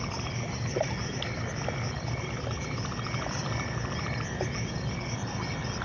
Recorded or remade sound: recorded